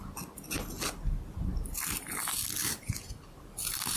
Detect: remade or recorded recorded